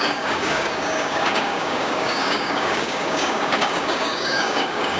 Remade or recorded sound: remade